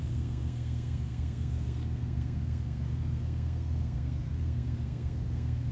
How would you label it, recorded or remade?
remade